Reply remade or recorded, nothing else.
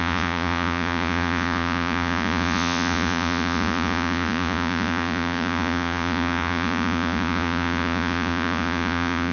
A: remade